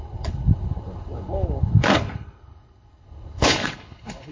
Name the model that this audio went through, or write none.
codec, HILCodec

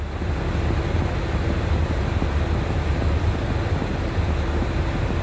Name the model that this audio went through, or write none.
none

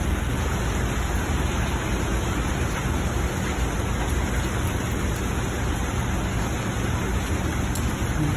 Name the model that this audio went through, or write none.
none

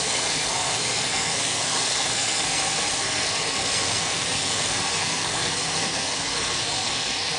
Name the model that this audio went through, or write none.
codec, SNAC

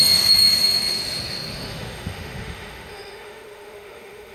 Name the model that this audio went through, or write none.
autoencoder, DAC-VAE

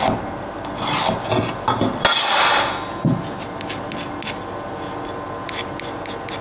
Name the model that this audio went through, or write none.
none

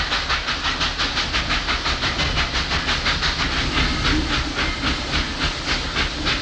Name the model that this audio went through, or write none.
none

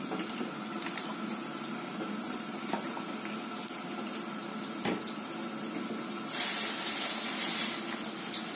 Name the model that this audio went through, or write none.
none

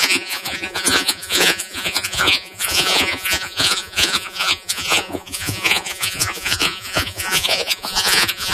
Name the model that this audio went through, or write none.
vocoder, Vocos